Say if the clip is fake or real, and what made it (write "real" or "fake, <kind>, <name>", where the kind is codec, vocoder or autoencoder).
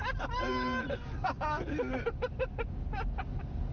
real